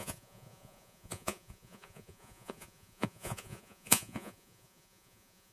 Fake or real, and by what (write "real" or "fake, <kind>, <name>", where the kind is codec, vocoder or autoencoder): fake, vocoder, Vocos